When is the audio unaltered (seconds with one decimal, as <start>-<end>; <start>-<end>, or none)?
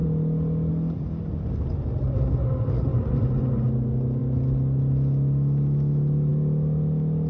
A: 0.0-7.3